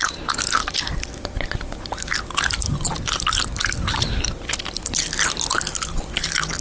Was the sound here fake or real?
real